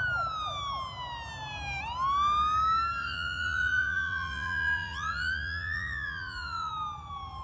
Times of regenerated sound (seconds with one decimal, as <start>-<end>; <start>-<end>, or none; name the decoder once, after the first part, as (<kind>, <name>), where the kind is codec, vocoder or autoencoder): 3.0-6.7 (vocoder, Vocos)